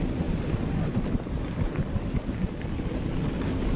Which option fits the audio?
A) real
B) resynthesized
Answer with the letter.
A